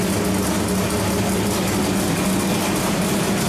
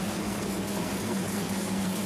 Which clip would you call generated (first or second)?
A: second